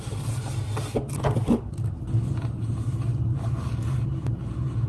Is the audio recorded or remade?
recorded